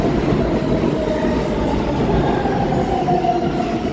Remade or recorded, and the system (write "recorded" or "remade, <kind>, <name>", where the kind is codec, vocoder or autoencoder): recorded